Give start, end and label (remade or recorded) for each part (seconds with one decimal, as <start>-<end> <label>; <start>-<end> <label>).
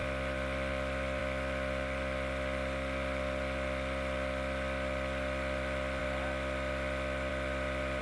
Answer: 0.0-8.0 recorded